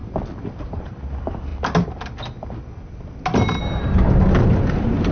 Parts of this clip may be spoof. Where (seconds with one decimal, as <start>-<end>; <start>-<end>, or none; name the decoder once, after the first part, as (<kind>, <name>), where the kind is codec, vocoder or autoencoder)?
0.5-1.5 (vocoder, BigVGAN v2); 3.6-5.1